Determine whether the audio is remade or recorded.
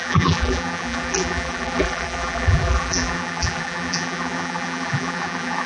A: remade